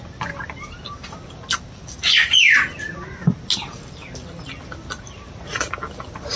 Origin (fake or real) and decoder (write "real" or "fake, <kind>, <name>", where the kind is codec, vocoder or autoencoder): real